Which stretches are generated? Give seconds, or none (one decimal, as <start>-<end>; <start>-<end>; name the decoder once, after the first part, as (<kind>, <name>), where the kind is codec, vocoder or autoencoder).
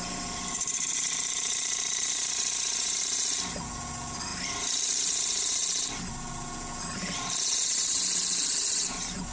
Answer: none